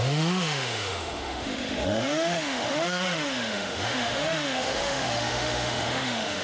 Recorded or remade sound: remade